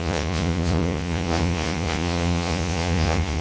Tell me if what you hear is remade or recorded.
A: remade